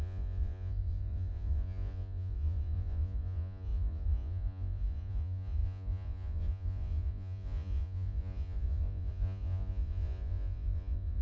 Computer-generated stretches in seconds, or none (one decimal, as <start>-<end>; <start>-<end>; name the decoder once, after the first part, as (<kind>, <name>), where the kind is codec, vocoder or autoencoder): 0.0-11.2 (vocoder, Vocos)